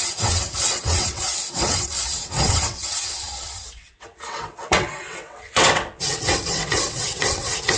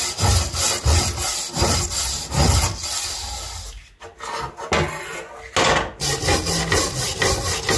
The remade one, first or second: first